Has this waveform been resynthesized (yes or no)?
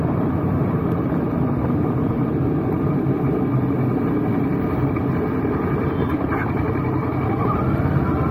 no